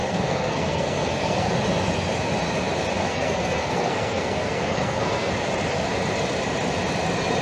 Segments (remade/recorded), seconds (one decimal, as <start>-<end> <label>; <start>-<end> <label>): 0.0-1.5 remade; 1.5-3.0 recorded; 3.0-5.3 remade; 5.3-7.4 recorded